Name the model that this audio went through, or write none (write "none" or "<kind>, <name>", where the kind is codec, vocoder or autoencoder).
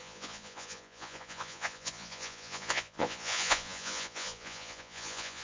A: vocoder, Vocos